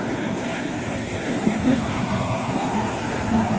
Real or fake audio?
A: fake